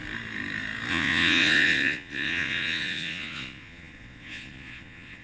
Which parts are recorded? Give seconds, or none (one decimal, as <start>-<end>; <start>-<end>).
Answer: 0.0-0.9